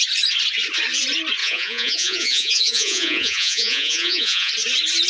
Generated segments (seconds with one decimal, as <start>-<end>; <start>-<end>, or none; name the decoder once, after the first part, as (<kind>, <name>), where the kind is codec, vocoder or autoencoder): 1.4-4.5 (vocoder, Vocos)